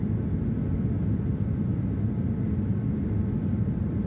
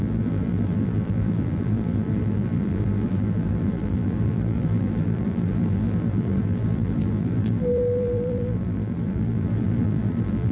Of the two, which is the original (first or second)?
first